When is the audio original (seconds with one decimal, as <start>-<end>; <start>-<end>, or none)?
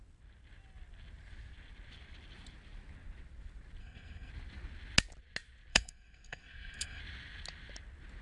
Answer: 0.0-3.8; 4.3-5.7; 7.0-8.2